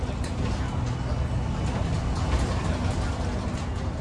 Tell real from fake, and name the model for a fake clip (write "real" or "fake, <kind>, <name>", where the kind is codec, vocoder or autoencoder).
real